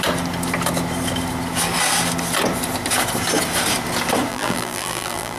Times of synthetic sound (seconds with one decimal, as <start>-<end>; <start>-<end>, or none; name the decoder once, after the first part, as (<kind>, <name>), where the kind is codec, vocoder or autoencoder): 4.3-5.4 (vocoder, BigVGAN v2)